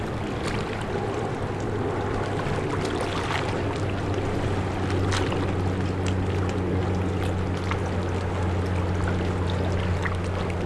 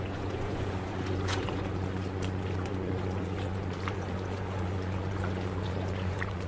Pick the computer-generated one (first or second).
second